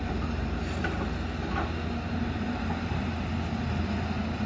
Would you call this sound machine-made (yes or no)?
no